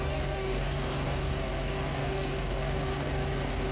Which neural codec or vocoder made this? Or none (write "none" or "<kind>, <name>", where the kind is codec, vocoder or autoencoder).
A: codec, DAC